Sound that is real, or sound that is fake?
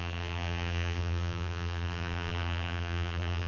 fake